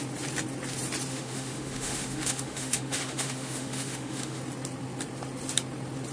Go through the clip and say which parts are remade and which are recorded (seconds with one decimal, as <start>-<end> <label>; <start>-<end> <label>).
0.0-1.1 recorded; 1.1-4.4 remade; 4.4-6.1 recorded